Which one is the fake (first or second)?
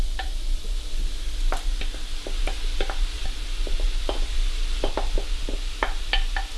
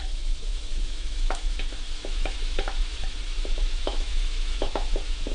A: second